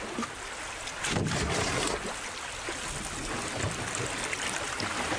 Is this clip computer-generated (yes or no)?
no